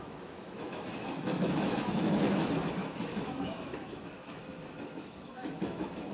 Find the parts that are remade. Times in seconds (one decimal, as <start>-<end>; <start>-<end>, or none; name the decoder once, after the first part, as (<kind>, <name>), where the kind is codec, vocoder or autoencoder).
0.0-6.1 (autoencoder, DAC-VAE)